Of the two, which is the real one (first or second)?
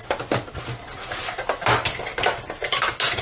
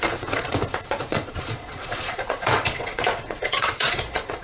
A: first